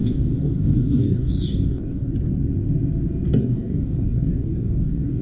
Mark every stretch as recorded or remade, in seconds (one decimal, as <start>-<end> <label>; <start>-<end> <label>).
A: 0.0-2.1 remade; 2.1-3.4 recorded; 3.4-5.2 remade